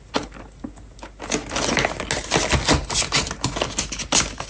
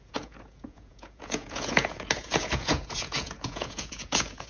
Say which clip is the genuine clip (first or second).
first